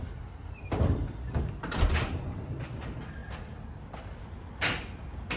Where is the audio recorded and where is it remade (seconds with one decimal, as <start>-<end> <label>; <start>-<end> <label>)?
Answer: 0.0-3.2 remade; 3.2-4.2 recorded; 4.2-5.4 remade